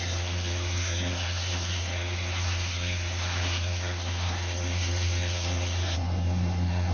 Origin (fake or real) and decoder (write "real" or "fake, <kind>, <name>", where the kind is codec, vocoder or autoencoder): fake, codec, SNAC